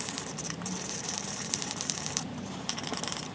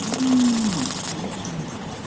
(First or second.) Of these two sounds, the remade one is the first